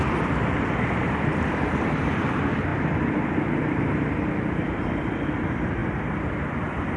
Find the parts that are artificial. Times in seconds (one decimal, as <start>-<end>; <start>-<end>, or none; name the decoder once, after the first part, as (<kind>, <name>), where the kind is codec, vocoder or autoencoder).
none